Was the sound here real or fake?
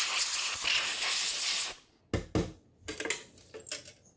real